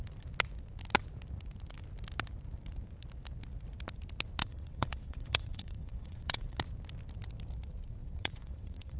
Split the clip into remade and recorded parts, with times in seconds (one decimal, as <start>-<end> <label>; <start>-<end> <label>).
0.0-4.4 recorded; 4.4-6.6 remade; 6.6-8.0 recorded; 8.0-9.0 remade